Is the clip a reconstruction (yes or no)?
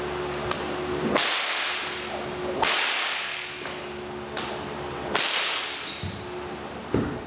no